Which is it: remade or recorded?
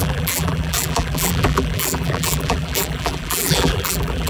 remade